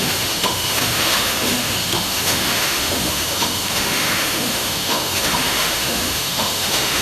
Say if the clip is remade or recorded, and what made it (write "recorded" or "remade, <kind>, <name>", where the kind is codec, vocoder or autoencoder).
remade, autoencoder, DAC-VAE